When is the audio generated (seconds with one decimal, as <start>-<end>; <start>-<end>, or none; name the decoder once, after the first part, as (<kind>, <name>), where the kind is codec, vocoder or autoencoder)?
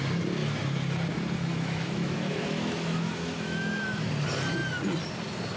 1.5-4.1 (autoencoder, DAC-VAE)